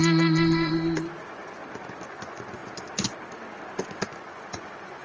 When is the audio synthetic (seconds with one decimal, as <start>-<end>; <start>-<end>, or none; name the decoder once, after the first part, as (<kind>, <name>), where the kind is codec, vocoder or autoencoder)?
0.0-1.6 (vocoder, Vocos); 2.1-2.6; 4.1-5.0